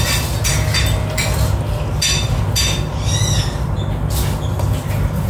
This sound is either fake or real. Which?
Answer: real